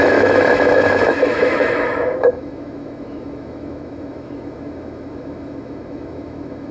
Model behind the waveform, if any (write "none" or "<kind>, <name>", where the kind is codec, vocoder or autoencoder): autoencoder, DAC-VAE